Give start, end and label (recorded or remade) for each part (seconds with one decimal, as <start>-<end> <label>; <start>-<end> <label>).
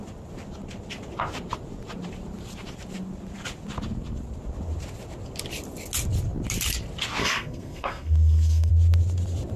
0.0-7.2 recorded; 7.2-8.7 remade; 8.7-9.6 recorded